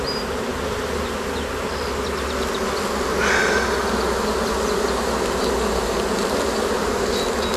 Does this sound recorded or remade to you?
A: recorded